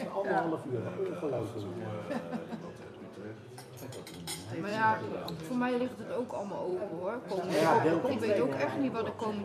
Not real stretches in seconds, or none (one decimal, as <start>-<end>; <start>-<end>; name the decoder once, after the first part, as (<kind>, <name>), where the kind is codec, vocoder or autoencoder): 0.0-4.7 (vocoder, BigVGAN v2); 5.3-6.7; 8.2-9.4